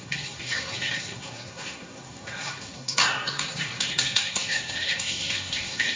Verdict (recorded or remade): remade